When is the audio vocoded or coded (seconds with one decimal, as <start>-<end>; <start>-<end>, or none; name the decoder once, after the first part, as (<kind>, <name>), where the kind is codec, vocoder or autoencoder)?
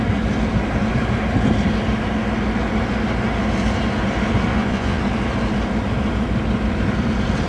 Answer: 4.5-5.0 (vocoder, Vocos)